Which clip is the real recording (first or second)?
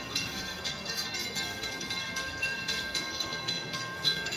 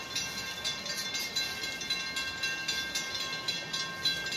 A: second